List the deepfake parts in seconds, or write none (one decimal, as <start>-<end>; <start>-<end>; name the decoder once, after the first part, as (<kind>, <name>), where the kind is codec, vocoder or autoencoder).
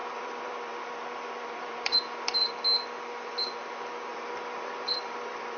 0.0-2.5 (vocoder, BigVGAN v2); 4.1-5.6